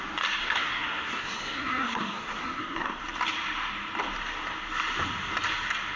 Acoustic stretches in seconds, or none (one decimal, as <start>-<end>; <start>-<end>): 0.0-0.4; 3.0-6.0